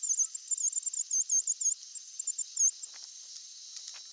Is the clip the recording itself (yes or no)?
yes